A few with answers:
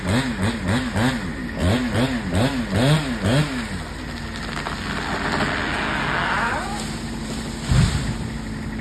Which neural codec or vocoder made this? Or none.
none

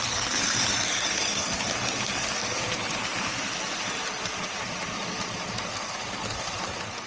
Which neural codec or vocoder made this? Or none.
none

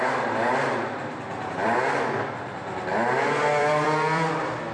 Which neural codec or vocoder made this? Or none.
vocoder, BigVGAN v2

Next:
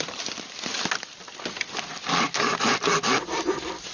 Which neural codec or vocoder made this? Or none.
none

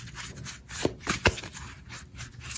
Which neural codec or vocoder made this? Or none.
none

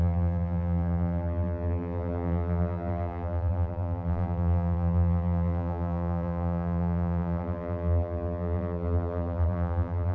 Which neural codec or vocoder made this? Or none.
vocoder, BigVGAN v2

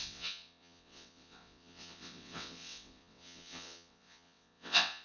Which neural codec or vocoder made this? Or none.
vocoder, WaveNeXt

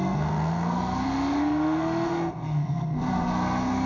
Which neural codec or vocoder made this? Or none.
codec, SNAC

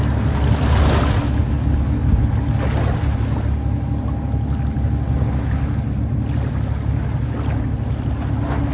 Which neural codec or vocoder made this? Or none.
none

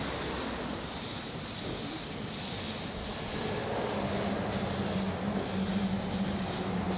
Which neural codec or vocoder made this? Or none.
none